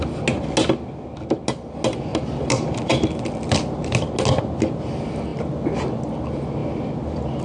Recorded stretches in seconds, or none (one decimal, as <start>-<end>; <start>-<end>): 0.0-7.4